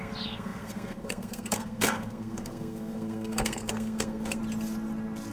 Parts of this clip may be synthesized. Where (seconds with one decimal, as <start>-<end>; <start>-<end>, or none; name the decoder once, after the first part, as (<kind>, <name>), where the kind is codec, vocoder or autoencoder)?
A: 0.0-4.4 (codec, SNAC)